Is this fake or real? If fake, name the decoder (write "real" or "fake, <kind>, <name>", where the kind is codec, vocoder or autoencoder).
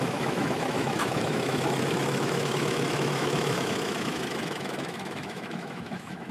fake, autoencoder, DAC-VAE